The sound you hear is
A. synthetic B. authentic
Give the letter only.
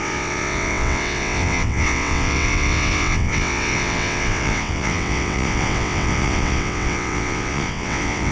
A